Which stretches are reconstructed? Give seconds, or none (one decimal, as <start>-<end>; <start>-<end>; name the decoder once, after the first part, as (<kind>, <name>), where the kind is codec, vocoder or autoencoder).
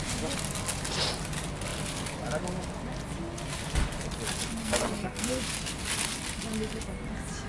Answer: 4.6-5.4 (codec, SNAC)